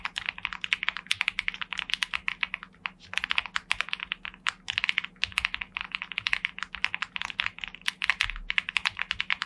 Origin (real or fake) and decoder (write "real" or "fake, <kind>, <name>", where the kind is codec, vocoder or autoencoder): real